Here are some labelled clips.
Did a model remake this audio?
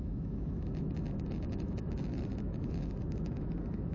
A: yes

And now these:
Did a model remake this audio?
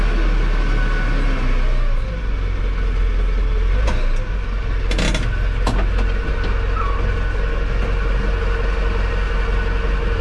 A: no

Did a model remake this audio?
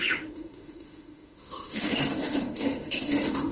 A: yes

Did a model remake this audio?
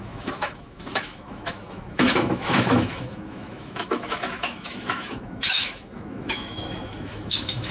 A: yes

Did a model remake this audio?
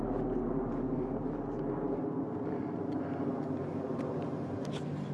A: no